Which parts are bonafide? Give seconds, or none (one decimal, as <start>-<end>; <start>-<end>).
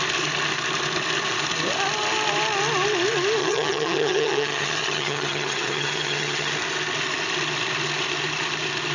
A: 0.0-3.4; 6.5-8.9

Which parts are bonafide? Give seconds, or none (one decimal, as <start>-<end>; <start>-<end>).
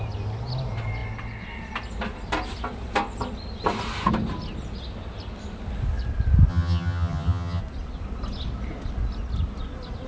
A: 0.0-6.5; 7.6-10.1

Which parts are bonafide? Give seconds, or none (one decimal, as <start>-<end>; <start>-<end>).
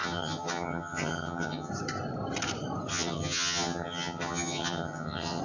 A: 1.7-2.9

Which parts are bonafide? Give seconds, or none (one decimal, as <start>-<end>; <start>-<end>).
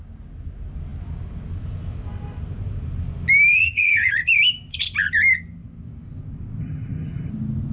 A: 0.0-3.5; 4.1-6.6; 7.3-7.7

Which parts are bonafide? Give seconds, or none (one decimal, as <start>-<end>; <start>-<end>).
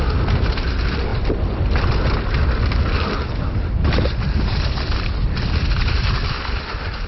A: 0.0-7.1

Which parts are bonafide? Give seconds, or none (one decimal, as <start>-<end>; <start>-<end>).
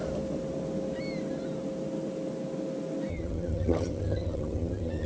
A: 0.0-3.1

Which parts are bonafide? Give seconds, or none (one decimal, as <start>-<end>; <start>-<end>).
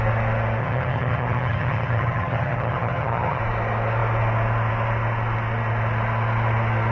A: 0.0-0.6; 3.4-6.9